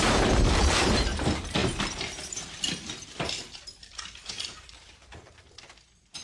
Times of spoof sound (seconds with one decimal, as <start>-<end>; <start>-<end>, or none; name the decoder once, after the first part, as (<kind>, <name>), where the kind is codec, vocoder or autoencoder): 0.0-6.2 (vocoder, BigVGAN v2)